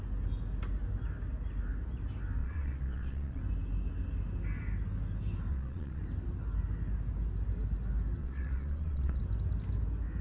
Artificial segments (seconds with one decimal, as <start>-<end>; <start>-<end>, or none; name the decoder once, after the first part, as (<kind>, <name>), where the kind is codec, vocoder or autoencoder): 2.4-3.4 (vocoder, Vocos); 5.5-6.0; 8.2-9.2